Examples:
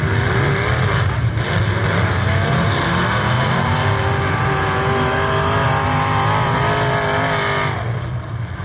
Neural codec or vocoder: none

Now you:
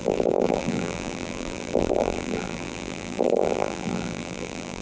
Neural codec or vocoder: vocoder, BigVGAN v2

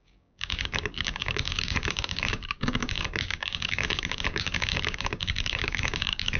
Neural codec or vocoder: codec, DAC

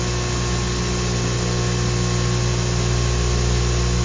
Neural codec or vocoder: none